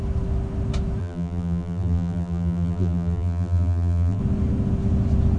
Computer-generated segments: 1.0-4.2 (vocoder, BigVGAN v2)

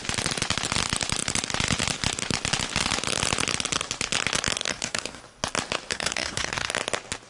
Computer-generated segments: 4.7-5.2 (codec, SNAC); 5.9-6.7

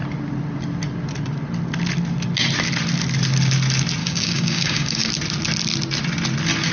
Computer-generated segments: 4.0-5.1 (codec, DAC)